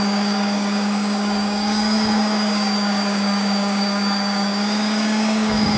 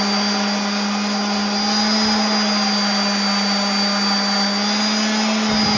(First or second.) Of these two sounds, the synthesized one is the first